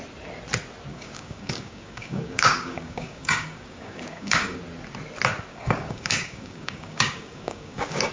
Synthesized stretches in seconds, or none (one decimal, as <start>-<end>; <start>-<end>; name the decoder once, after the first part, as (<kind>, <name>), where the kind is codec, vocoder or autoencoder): 0.9-4.6 (codec, DAC); 5.5-8.1